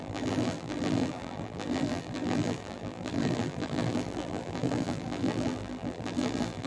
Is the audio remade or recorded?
remade